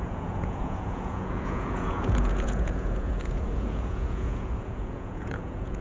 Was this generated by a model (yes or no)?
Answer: yes